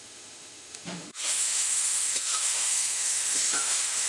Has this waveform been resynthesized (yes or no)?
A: yes